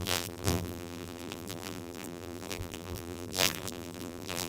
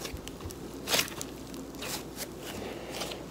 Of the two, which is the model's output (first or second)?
first